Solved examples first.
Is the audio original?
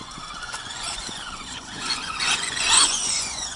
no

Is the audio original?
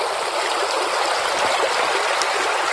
yes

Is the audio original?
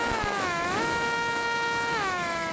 no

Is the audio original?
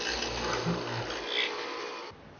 yes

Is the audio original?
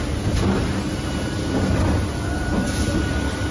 yes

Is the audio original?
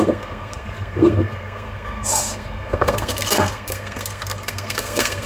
no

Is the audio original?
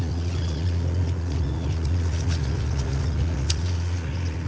no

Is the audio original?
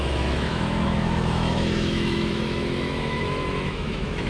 no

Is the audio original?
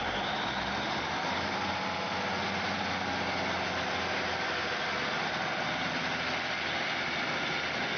yes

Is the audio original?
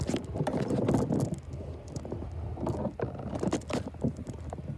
yes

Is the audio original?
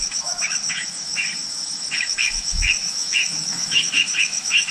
no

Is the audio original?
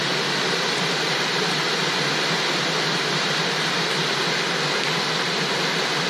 yes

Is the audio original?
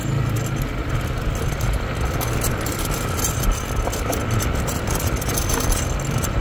yes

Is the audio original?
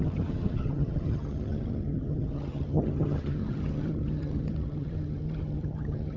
no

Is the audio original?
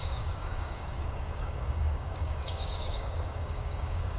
no